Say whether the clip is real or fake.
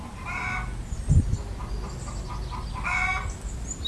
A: real